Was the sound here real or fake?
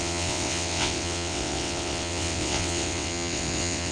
fake